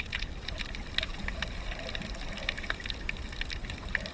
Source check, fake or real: real